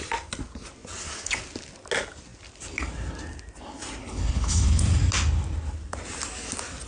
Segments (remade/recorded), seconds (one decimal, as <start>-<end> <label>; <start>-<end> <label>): 0.0-4.0 recorded; 4.0-4.8 remade; 4.8-6.9 recorded

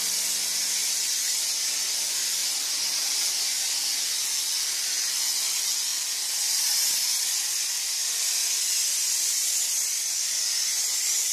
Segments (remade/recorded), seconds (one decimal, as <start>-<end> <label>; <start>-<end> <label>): 0.0-11.3 recorded

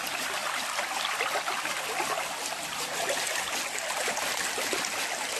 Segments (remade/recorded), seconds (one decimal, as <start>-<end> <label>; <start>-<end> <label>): 0.0-5.4 recorded